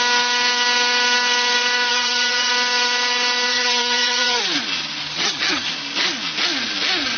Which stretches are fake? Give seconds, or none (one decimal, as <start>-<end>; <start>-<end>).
1.9-2.5; 3.5-4.4; 5.0-5.7